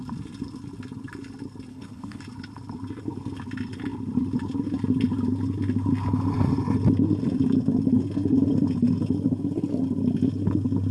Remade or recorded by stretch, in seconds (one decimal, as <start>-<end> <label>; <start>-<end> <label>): 0.0-1.7 recorded; 1.7-2.2 remade; 2.2-10.9 recorded